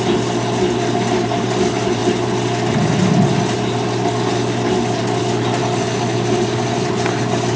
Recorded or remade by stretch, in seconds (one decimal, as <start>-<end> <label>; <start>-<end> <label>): 0.0-7.6 recorded